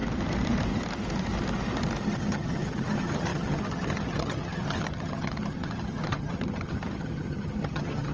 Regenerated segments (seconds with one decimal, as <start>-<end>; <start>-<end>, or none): 2.0-8.1